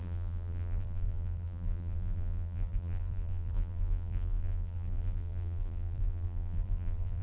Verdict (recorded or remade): remade